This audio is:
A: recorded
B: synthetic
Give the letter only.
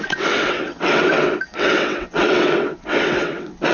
B